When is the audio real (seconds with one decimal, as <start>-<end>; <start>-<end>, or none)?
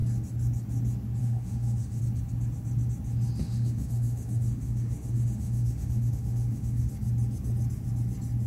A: 0.0-1.2; 2.0-3.4; 6.9-8.5